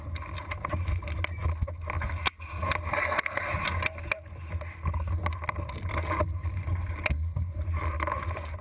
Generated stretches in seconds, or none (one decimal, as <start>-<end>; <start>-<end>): none